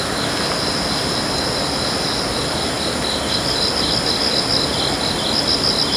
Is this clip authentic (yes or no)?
yes